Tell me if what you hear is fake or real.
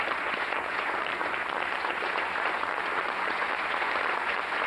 fake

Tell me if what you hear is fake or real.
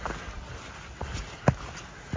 real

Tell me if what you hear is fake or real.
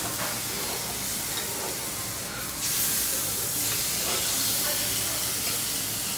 real